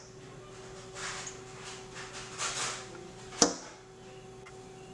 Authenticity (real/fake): real